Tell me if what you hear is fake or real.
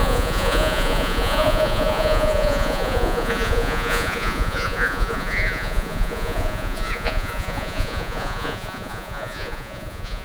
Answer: fake